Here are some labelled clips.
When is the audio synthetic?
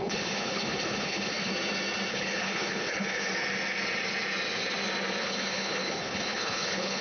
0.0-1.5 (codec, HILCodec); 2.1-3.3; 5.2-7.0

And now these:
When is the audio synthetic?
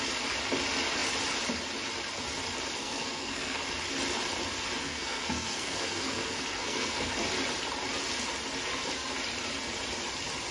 2.8-3.6 (codec, SNAC); 4.8-7.1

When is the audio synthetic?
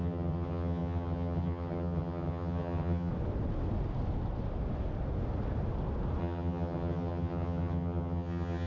0.0-3.1 (vocoder, HiFi-GAN); 6.2-8.7